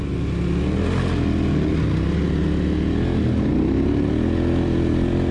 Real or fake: real